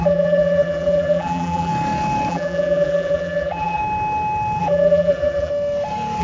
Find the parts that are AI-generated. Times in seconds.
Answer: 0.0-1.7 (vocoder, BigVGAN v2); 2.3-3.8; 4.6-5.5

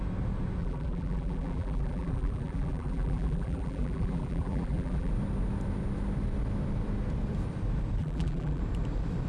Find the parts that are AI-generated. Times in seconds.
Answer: 0.6-5.1 (vocoder, BigVGAN v2); 8.0-8.6